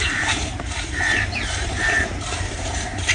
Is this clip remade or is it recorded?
remade